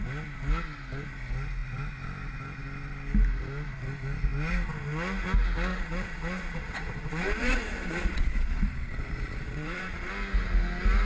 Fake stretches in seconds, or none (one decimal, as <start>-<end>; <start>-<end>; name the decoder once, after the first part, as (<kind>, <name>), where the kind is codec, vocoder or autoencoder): 5.7-10.1 (vocoder, Vocos)